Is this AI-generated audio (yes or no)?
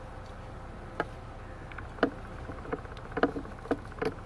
no